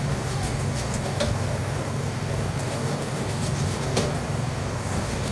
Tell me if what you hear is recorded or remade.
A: remade